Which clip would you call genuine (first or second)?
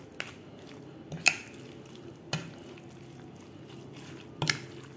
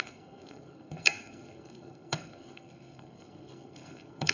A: first